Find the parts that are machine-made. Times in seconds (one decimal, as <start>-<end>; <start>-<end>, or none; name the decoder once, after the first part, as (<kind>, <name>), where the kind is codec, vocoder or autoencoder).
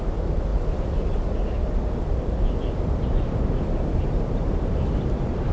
0.0-0.5 (vocoder, BigVGAN v2); 3.8-5.5